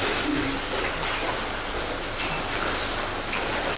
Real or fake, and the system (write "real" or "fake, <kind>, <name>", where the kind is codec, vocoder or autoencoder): real